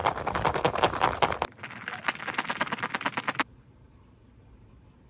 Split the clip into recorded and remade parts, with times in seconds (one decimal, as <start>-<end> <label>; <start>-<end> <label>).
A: 0.0-5.1 recorded

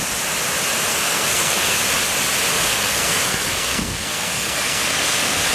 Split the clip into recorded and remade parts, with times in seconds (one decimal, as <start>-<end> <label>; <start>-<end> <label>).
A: 0.0-0.9 recorded; 0.9-1.8 remade; 1.8-2.5 recorded; 2.5-5.5 remade

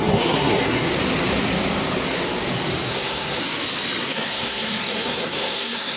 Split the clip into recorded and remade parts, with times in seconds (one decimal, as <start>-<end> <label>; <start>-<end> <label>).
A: 0.0-0.9 remade; 0.9-2.9 recorded; 2.9-3.4 remade; 3.4-4.0 recorded; 4.0-6.0 remade

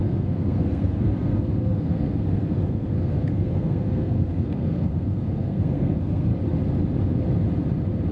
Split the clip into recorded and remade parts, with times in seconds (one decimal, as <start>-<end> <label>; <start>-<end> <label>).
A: 0.0-6.3 remade; 6.3-8.1 recorded

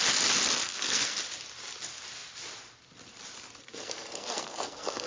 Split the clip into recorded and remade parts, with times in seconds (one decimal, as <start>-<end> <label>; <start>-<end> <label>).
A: 0.0-0.6 recorded; 0.6-1.2 remade; 1.2-3.6 recorded; 3.6-5.1 remade

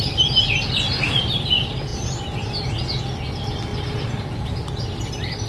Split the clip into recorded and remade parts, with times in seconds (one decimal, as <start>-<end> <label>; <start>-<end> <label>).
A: 0.0-5.5 recorded

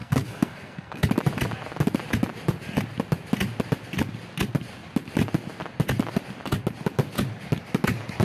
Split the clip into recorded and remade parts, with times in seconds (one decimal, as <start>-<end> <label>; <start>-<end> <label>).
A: 0.0-1.1 remade; 1.1-8.2 recorded